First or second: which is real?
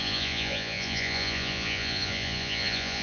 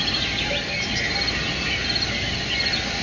second